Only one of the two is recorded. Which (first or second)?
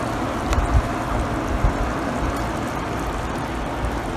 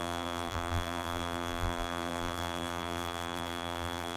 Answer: first